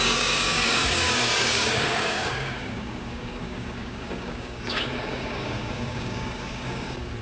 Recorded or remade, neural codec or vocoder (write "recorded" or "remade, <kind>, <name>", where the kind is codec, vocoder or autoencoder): remade, codec, DAC